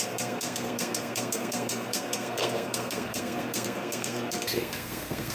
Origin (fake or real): fake